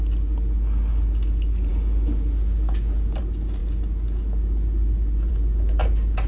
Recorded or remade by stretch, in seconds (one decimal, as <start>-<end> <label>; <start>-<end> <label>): 0.0-6.3 recorded